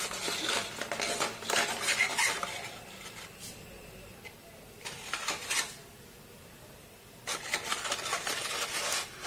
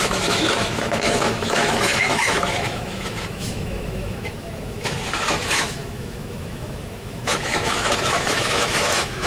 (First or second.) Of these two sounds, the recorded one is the first